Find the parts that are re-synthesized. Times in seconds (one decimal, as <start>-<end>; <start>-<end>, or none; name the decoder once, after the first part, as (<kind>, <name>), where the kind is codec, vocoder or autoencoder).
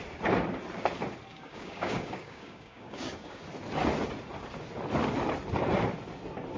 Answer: 1.3-3.4 (codec, DAC)